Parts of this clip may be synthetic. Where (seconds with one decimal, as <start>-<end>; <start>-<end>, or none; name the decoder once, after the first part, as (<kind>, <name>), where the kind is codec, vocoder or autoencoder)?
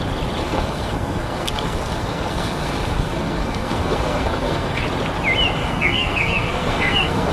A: 0.4-4.8 (codec, SNAC); 5.6-7.3